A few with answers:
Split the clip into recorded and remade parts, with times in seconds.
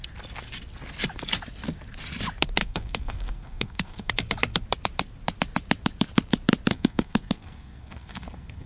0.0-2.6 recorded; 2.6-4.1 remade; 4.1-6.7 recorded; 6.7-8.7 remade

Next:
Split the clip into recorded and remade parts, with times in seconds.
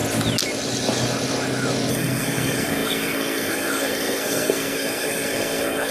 0.0-1.9 recorded; 1.9-5.9 remade